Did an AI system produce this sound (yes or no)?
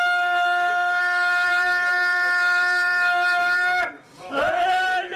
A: yes